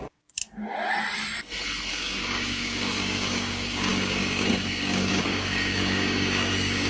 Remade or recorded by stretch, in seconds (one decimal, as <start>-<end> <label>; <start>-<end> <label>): 0.0-0.4 remade; 0.4-1.9 recorded; 1.9-6.9 remade